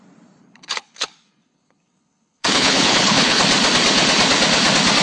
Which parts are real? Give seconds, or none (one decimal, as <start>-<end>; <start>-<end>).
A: 0.0-0.4; 3.4-5.0